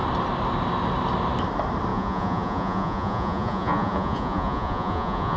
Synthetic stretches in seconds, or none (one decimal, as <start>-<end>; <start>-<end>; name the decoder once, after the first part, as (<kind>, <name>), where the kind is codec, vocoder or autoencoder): 1.9-5.4 (vocoder, Vocos)